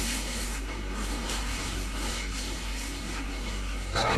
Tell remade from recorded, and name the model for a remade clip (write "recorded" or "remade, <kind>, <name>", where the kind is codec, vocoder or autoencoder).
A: remade, codec, SNAC